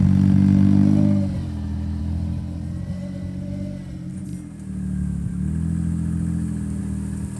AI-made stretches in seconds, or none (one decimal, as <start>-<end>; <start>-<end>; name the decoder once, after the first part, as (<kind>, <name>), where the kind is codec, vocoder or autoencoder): none